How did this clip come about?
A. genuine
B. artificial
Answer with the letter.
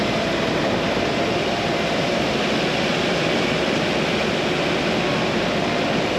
A